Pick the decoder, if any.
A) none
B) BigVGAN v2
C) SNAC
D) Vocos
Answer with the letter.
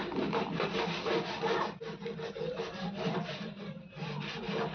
A